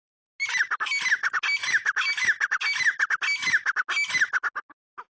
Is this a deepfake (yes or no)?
no